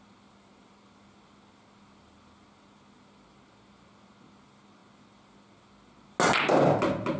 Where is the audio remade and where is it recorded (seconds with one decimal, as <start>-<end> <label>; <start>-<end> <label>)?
0.0-7.2 recorded